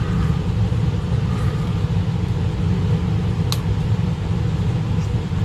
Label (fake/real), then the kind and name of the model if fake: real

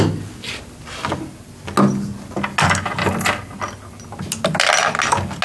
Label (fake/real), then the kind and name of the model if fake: real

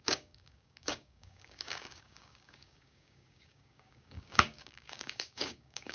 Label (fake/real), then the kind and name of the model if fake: fake, codec, DAC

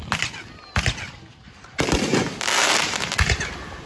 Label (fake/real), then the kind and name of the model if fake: real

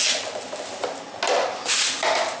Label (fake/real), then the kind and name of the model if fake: real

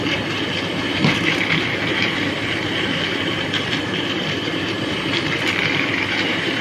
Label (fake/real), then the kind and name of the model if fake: fake, vocoder, BigVGAN v2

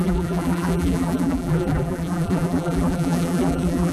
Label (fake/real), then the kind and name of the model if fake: fake, vocoder, BigVGAN v2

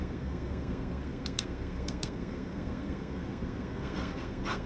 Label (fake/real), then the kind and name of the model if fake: fake, codec, SNAC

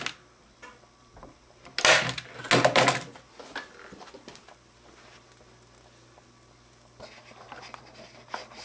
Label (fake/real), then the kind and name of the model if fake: real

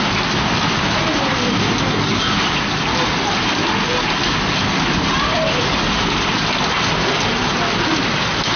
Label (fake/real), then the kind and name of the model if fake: real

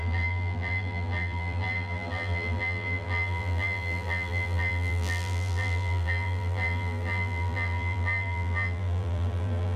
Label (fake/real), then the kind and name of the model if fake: fake, vocoder, BigVGAN v2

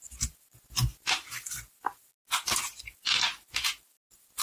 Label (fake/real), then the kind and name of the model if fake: real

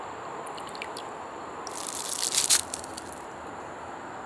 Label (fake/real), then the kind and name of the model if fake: real